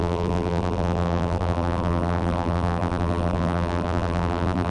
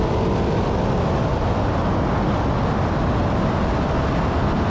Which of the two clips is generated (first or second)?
first